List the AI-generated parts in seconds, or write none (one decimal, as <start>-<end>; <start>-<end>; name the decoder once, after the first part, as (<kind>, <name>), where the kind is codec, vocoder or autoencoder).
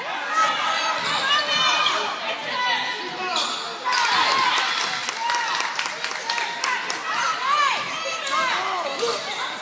none